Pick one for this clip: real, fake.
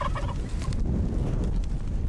real